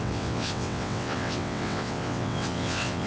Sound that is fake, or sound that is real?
fake